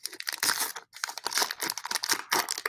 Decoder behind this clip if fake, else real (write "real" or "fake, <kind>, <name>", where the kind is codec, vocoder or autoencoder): real